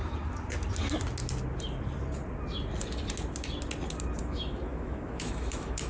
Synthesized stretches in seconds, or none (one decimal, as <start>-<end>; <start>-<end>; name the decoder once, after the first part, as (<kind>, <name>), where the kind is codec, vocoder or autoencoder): 4.2-5.9 (autoencoder, DAC-VAE)

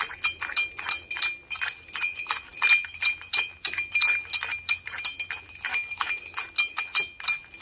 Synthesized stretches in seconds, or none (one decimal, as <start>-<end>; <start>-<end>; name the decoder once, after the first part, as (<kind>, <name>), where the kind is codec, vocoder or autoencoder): 5.7-6.2 (autoencoder, DAC-VAE)

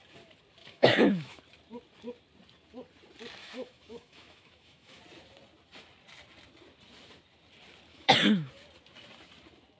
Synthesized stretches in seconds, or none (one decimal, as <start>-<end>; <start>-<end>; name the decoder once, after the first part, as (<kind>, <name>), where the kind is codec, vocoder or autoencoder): 0.6-1.4 (autoencoder, DAC-VAE); 3.4-5.0; 7.9-8.5

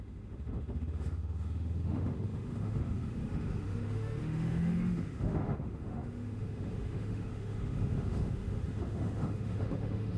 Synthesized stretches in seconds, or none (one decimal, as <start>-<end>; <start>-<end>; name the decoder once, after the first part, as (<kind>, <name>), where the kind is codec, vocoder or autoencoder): 0.0-10.2 (autoencoder, DAC-VAE)